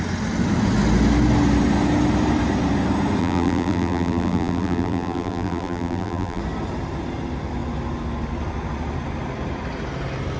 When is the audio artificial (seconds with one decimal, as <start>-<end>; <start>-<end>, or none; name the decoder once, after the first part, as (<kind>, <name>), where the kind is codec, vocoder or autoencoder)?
3.2-6.4 (vocoder, BigVGAN v2)